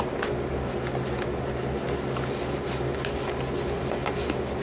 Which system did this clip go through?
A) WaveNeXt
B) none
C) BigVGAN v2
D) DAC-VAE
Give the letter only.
B